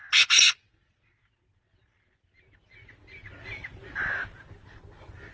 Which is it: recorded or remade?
recorded